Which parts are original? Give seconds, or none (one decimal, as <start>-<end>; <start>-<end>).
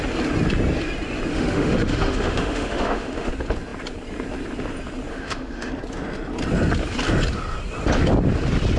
0.0-1.3; 3.3-5.1; 5.7-8.8